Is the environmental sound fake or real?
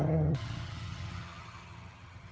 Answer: fake